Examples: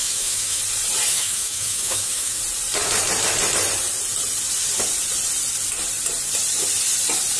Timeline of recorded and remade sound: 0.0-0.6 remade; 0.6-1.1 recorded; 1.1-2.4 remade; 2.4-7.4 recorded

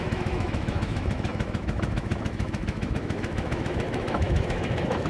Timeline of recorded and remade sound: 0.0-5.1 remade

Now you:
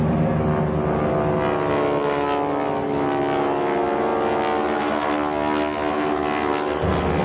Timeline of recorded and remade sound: 0.0-7.2 recorded